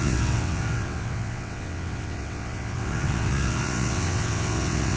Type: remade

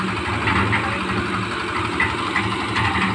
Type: recorded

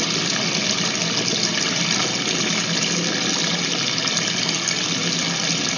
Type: recorded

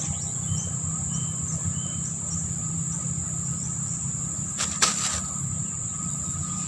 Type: recorded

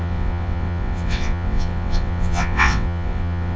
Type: remade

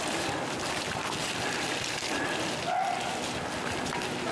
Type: recorded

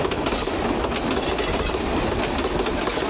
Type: recorded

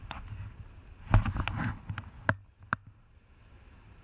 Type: recorded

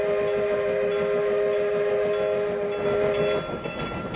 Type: recorded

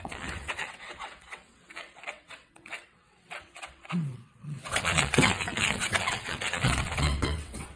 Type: remade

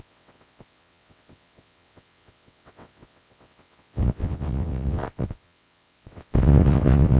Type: remade